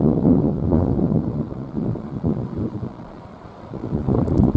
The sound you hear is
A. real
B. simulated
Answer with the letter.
B